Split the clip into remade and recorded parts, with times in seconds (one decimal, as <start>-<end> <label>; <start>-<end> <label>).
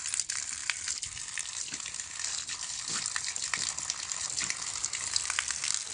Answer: 0.0-5.9 recorded